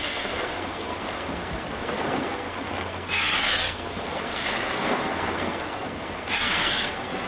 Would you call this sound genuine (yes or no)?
no